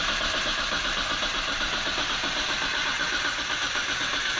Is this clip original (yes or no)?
no